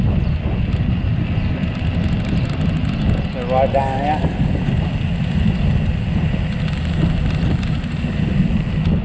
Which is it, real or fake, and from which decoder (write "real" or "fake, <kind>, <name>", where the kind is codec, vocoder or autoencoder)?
real